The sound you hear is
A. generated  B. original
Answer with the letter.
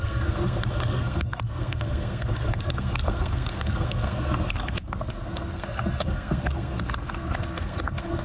A